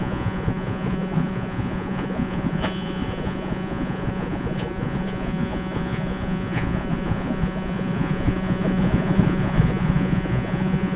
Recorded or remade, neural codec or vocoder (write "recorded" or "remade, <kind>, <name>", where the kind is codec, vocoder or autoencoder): remade, vocoder, Vocos